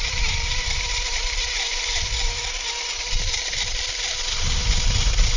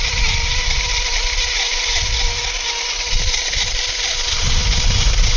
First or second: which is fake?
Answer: first